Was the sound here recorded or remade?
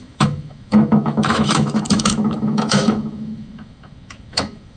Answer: remade